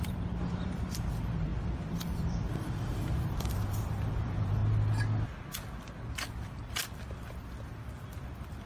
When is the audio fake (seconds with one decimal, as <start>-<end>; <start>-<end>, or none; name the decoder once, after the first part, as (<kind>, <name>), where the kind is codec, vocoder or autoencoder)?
0.0-4.6 (vocoder, BigVGAN v2)